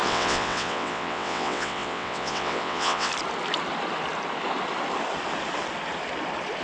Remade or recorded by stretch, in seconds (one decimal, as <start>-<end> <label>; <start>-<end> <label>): 0.0-3.1 remade; 3.1-6.6 recorded